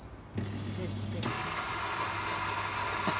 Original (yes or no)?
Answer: yes